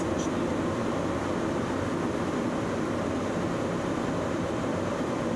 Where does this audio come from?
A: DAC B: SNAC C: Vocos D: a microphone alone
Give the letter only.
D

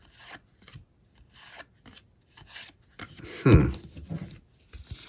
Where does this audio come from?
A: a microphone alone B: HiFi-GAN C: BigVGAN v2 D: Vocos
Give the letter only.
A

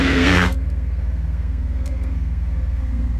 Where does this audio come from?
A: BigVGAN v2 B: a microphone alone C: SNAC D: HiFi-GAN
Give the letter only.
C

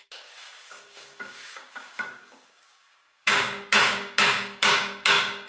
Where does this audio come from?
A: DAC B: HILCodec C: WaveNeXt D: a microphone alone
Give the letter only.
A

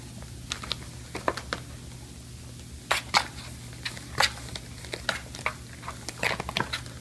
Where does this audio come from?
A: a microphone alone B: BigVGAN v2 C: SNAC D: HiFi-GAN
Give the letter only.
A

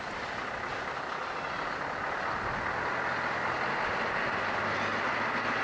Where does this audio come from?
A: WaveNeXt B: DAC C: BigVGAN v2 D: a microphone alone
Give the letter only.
D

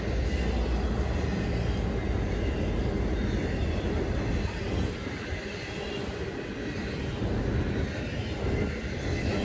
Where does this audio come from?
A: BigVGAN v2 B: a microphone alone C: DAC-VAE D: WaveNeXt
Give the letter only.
B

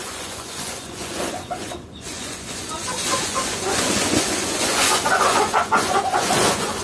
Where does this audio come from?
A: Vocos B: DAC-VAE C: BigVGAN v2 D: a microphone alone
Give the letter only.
A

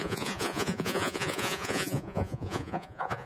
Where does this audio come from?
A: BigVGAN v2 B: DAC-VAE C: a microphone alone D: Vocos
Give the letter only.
D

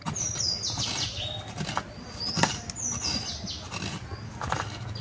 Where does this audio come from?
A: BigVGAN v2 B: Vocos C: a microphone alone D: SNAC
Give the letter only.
C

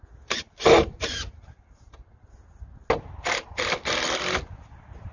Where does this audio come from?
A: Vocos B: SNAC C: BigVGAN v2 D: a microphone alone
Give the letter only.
D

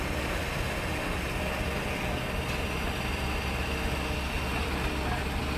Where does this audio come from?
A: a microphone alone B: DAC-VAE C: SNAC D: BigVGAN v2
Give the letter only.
A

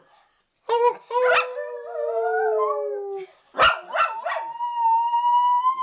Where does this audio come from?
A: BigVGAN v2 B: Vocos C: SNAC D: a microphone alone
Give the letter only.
D